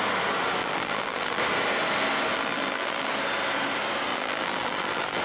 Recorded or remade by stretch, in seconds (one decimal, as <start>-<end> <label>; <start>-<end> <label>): 0.0-0.6 recorded; 0.6-1.4 remade; 1.4-2.3 recorded; 2.3-3.1 remade; 3.1-4.1 recorded; 4.1-5.2 remade